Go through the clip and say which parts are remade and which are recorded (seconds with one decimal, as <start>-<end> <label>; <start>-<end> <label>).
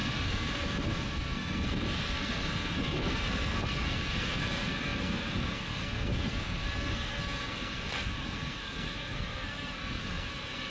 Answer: 0.0-10.7 remade